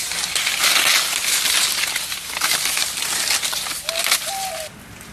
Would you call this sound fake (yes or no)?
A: no